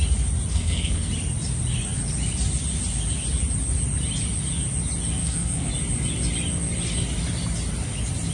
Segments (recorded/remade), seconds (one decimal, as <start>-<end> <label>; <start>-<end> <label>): 0.0-0.5 recorded; 0.5-1.1 remade; 1.1-5.2 recorded; 5.2-5.7 remade; 5.7-8.3 recorded